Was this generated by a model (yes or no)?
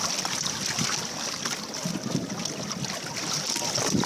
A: no